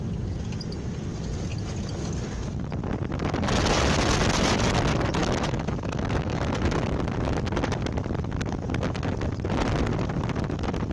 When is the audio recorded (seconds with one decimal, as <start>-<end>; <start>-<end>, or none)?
0.0-5.2; 6.8-10.9